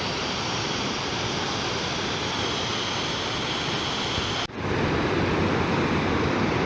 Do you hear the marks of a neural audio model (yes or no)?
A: no